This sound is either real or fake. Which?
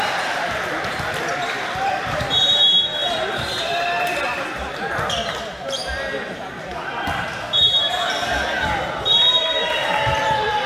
fake